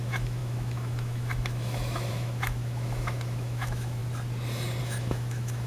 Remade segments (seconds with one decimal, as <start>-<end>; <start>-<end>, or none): 0.0-4.0; 4.8-5.7